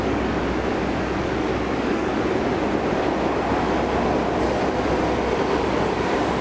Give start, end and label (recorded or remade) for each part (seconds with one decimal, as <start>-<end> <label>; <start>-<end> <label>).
0.0-0.4 remade; 0.4-1.0 recorded; 1.0-2.1 remade; 2.1-5.5 recorded; 5.5-6.4 remade